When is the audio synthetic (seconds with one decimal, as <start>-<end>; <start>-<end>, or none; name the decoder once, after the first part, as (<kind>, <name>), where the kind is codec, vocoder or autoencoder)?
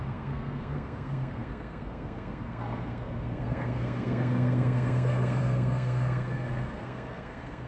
0.0-7.7 (codec, SNAC)